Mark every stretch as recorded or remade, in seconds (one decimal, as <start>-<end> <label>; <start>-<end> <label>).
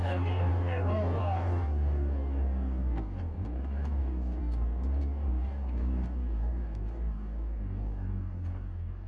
0.0-9.1 remade